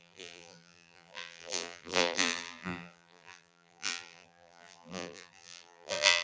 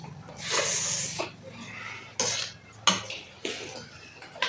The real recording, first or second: second